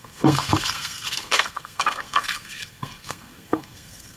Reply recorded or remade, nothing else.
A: remade